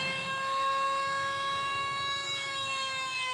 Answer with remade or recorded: remade